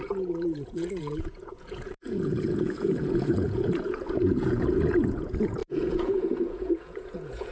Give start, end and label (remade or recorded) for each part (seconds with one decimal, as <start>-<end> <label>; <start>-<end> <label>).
0.0-7.5 remade